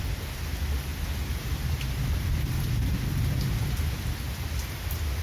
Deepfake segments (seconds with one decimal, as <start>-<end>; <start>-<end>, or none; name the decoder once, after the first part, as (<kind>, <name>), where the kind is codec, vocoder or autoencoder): none